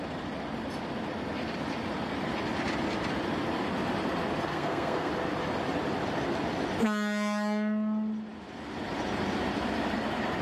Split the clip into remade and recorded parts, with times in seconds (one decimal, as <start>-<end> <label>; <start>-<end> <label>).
0.0-4.5 recorded; 4.5-5.1 remade; 5.1-10.4 recorded